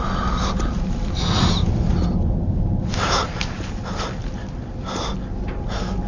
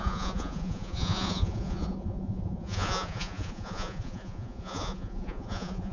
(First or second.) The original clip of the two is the first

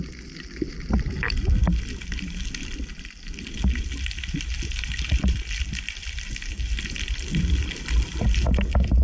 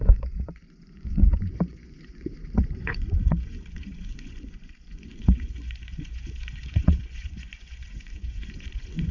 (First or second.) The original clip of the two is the first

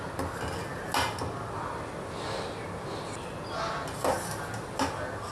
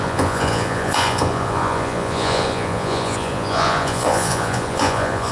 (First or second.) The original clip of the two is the first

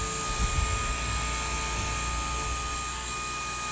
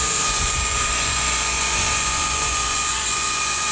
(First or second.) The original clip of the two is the first